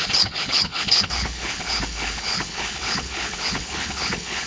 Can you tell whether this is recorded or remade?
remade